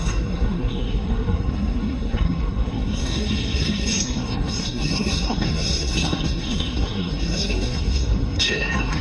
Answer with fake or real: fake